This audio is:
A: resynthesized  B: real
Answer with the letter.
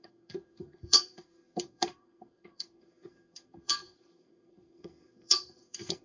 A